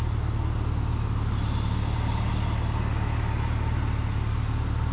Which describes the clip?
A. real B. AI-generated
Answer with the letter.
A